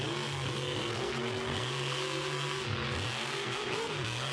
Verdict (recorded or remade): remade